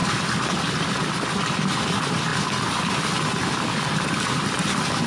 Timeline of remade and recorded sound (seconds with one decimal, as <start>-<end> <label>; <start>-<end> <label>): 0.0-1.0 remade; 1.0-5.1 recorded